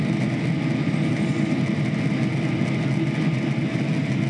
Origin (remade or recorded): recorded